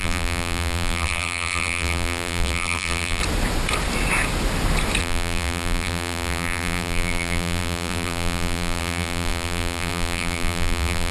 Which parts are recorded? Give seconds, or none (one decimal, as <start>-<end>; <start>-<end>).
3.2-5.0